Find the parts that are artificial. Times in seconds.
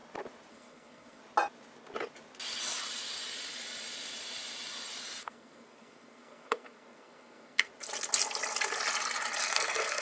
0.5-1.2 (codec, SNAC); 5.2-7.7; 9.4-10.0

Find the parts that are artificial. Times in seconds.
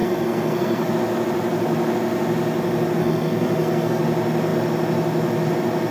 0.0-0.9 (codec, SNAC); 3.0-4.0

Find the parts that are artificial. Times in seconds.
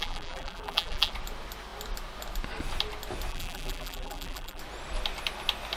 0.0-1.1 (vocoder, BigVGAN v2); 3.3-4.6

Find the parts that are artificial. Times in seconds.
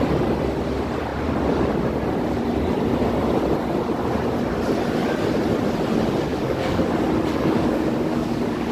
6.3-6.8 (codec, DAC); 7.3-8.7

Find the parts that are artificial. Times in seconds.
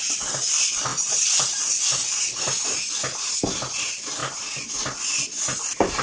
0.9-1.9 (vocoder, BigVGAN v2)